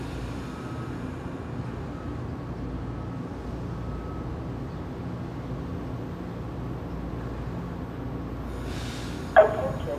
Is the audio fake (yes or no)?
no